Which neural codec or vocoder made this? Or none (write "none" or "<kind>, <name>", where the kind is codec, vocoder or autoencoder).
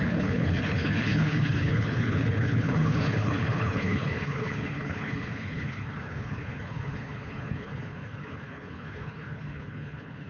codec, HILCodec